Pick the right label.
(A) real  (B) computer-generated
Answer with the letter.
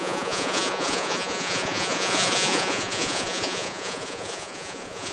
B